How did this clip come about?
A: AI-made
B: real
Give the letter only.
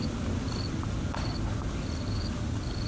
B